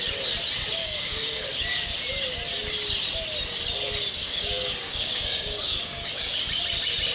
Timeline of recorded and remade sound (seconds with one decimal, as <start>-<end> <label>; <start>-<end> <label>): 0.0-0.8 recorded; 0.8-1.5 remade; 1.5-4.2 recorded; 4.2-6.4 remade; 6.4-7.1 recorded